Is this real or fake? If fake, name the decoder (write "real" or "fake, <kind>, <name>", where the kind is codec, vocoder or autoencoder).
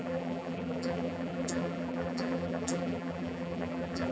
fake, vocoder, BigVGAN v2